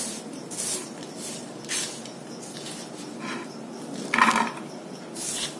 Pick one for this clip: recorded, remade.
recorded